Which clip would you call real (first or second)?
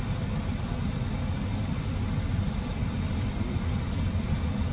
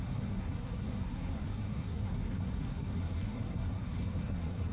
first